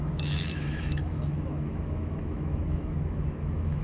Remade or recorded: remade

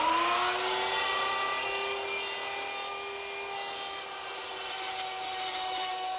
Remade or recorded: recorded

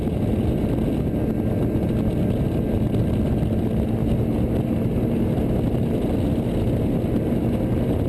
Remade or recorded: recorded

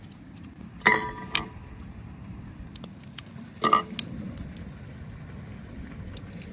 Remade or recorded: recorded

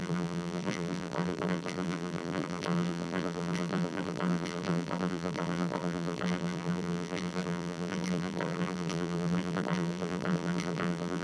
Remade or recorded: remade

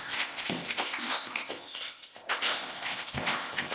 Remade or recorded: remade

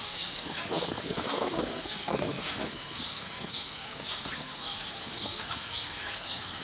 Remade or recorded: remade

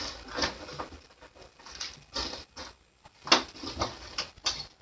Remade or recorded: recorded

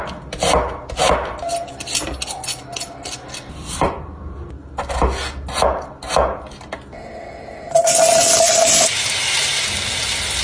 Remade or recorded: recorded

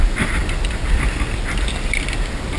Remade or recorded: recorded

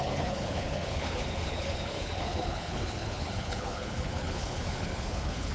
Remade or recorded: remade